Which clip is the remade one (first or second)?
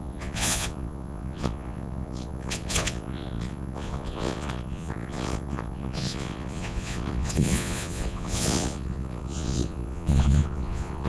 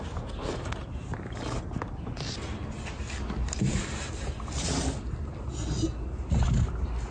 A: first